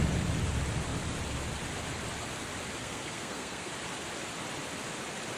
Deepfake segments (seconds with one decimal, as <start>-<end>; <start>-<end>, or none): 2.8-3.7